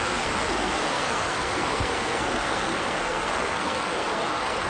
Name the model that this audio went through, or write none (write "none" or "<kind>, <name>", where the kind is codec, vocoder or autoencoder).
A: codec, SNAC